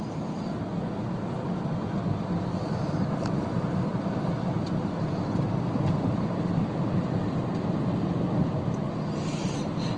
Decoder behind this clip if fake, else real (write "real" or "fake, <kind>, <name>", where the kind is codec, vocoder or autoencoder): real